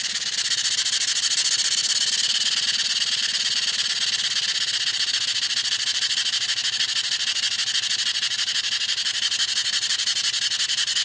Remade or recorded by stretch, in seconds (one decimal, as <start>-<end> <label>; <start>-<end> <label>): 0.0-11.0 recorded